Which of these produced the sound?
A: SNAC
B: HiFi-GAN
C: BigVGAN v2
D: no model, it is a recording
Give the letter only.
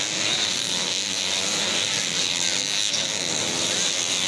D